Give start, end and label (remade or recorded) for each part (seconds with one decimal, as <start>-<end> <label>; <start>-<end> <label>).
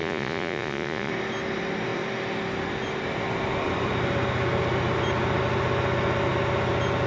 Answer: 0.0-1.1 remade; 1.1-7.1 recorded